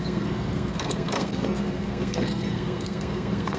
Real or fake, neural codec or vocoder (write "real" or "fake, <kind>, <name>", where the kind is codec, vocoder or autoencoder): fake, codec, SNAC